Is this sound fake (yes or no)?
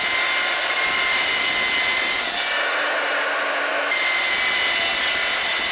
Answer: no